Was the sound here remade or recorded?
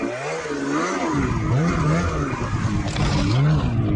recorded